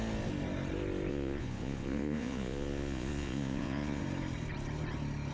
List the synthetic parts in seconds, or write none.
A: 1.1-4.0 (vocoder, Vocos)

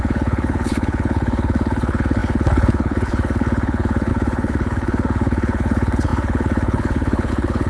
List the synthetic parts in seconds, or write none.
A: 0.0-7.7 (codec, HILCodec)

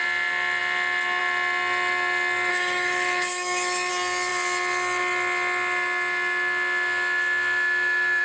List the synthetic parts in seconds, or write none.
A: 2.5-3.9 (autoencoder, DAC-VAE)